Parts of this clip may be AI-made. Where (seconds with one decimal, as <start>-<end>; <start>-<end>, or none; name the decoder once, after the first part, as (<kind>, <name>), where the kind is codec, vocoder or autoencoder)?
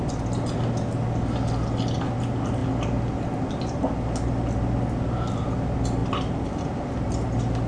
none